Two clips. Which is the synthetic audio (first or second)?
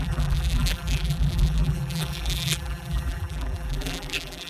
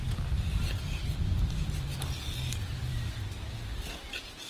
first